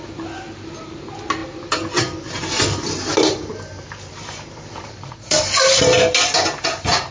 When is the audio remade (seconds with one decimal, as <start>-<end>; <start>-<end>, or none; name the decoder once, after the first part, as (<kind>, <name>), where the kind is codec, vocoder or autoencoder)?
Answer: none